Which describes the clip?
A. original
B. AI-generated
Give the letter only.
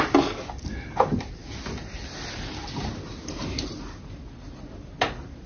A